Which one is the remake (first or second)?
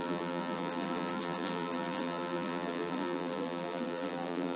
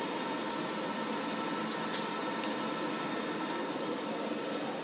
first